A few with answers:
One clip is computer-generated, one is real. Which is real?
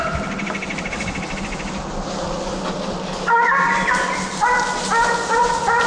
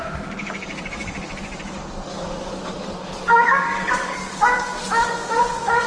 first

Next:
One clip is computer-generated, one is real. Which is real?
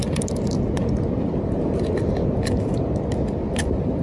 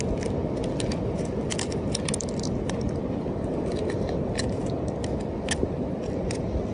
first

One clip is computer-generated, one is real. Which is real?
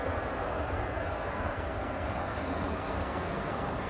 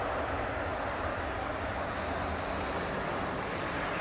second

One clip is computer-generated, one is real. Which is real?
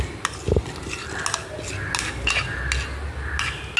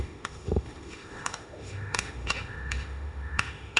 first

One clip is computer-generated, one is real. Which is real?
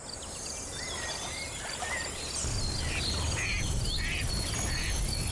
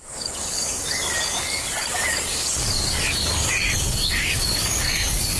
first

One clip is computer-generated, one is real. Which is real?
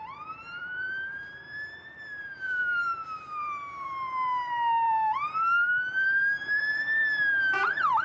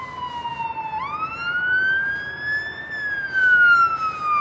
second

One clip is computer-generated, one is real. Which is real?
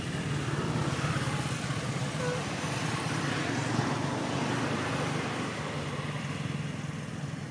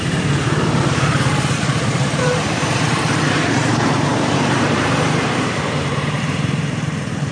first